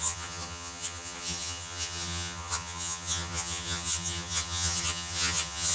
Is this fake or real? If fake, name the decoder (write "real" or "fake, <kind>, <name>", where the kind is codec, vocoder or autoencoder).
fake, vocoder, HiFi-GAN